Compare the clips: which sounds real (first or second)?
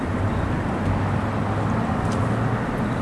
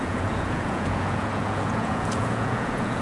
first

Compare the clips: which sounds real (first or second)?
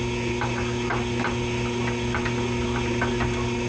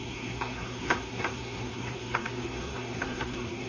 first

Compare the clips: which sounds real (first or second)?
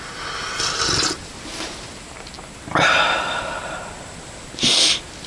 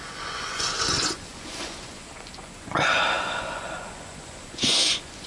first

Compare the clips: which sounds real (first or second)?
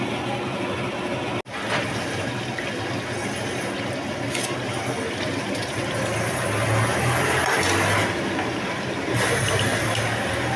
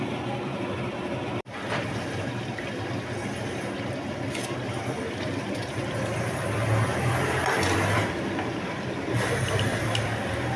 first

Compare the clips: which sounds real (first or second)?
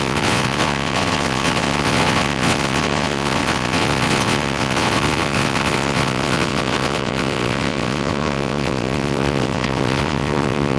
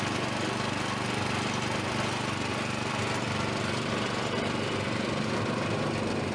second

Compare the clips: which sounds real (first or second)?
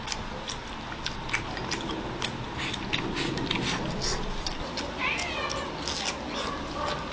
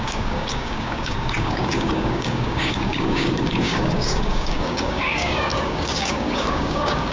first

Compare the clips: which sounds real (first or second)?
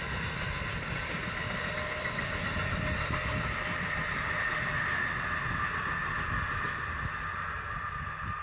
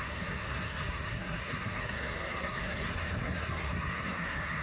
first